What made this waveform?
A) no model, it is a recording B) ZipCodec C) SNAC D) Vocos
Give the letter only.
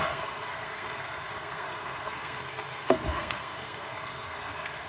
C